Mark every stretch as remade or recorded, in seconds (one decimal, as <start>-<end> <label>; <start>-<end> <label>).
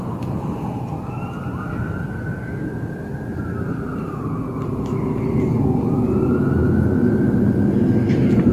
0.0-8.5 recorded